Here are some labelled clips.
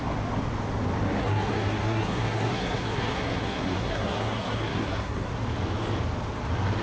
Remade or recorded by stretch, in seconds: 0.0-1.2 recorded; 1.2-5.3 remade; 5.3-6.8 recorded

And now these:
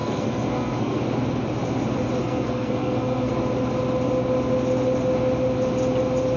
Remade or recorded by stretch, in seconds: 0.0-1.0 remade; 1.0-2.2 recorded; 2.2-3.3 remade; 3.3-6.4 recorded

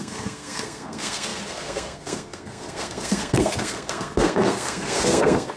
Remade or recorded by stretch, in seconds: 0.0-5.6 remade

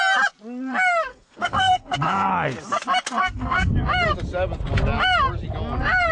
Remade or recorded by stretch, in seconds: 0.0-1.1 recorded; 1.1-2.3 remade; 2.3-3.2 recorded; 3.2-3.7 remade; 3.7-6.1 recorded